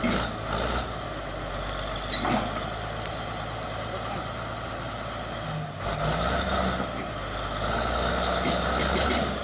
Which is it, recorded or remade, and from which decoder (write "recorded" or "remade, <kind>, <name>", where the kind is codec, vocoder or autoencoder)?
recorded